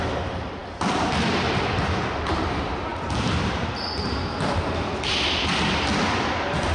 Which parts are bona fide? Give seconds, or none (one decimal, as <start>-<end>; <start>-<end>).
0.0-6.7

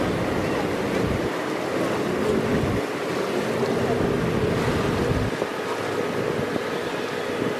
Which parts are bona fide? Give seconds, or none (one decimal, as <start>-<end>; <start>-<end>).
0.0-7.6

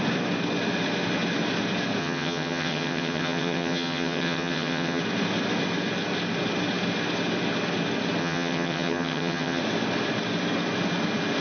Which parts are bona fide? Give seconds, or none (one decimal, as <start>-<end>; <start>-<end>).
0.0-2.0; 5.0-8.2; 9.6-11.4